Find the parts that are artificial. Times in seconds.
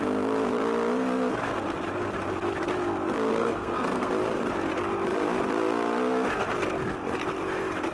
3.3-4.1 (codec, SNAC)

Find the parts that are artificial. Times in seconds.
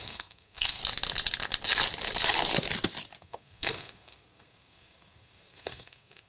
0.0-0.8 (codec, SNAC); 3.2-6.3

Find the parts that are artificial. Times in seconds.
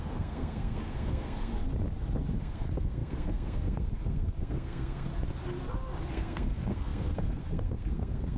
0.0-1.5 (codec, SNAC); 2.4-5.1; 6.1-8.4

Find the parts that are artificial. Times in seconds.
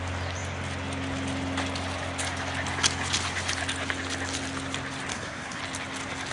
5.1-5.6 (codec, SNAC)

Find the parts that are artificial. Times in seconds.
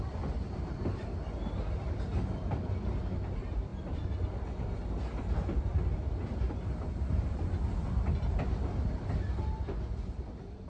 none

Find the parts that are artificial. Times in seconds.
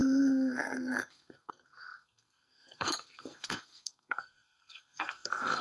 0.0-5.6 (codec, SNAC)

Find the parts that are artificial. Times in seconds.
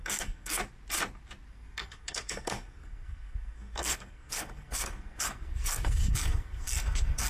0.0-0.6 (codec, SNAC); 1.5-7.3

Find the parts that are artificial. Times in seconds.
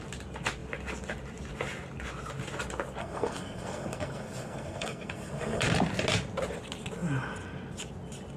3.0-5.6 (codec, SNAC)